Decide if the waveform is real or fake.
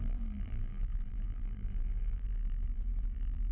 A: fake